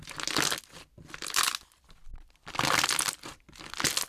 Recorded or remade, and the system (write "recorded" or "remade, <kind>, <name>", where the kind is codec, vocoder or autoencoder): recorded